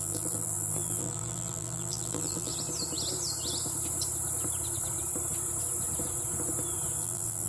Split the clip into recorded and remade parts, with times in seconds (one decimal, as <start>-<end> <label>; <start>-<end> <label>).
0.0-2.5 remade; 2.5-7.0 recorded; 7.0-7.5 remade